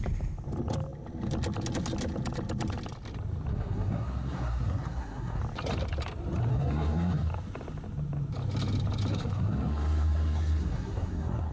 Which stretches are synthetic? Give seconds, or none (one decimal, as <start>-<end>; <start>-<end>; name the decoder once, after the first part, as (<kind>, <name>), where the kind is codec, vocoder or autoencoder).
3.5-5.4 (codec, SNAC); 6.5-7.3; 9.1-11.5